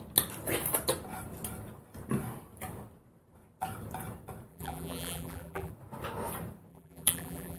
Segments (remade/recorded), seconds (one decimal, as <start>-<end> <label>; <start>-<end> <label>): 0.0-4.5 recorded; 4.5-5.7 remade; 5.7-6.7 recorded; 6.7-7.6 remade